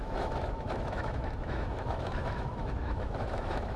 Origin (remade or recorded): remade